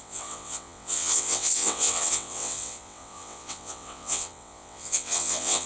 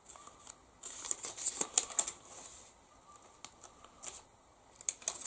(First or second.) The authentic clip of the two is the second